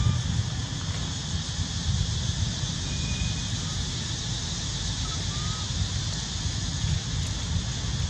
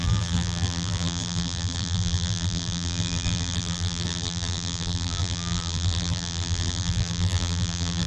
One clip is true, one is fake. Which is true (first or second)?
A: first